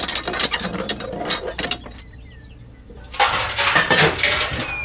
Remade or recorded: recorded